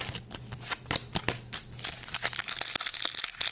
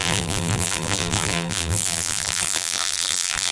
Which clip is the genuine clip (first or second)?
first